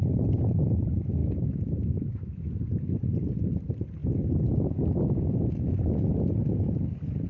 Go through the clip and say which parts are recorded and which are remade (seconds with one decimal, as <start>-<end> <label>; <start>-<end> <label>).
0.0-1.2 recorded; 1.2-2.5 remade; 2.5-7.3 recorded